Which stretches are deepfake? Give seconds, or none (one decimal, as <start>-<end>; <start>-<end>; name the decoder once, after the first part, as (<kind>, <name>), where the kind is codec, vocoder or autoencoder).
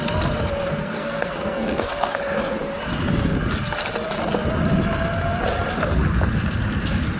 0.8-2.2 (codec, SNAC)